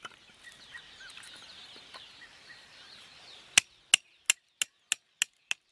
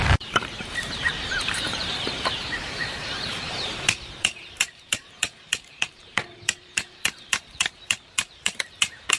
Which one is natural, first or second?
first